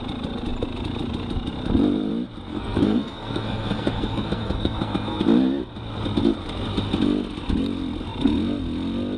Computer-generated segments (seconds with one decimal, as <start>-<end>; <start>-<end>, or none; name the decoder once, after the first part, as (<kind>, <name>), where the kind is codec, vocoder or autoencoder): 2.5-5.2 (codec, SNAC)